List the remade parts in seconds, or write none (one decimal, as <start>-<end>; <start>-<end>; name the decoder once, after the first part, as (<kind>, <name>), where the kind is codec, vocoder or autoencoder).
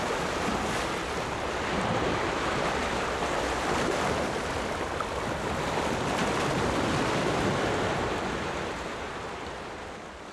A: none